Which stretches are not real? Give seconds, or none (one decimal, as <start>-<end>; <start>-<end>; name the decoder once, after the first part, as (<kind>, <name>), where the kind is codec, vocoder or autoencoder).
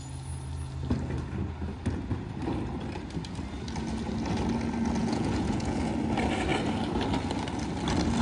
5.0-5.9 (vocoder, Vocos)